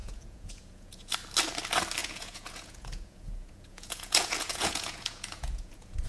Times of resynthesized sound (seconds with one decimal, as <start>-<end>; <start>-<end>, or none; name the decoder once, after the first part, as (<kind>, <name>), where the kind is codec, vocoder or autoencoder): 0.0-1.1 (vocoder, Vocos); 2.0-6.1